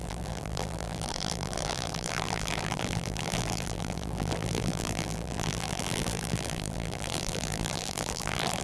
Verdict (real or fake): fake